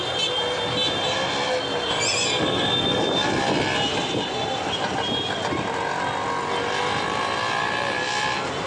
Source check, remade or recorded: recorded